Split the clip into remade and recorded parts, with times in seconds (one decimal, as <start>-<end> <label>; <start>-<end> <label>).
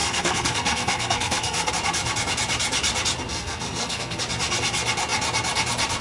0.0-1.7 remade; 1.7-3.3 recorded; 3.3-4.2 remade; 4.2-6.0 recorded